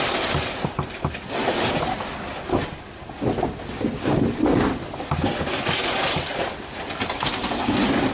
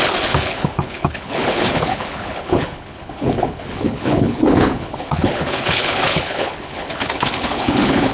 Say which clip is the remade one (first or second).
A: second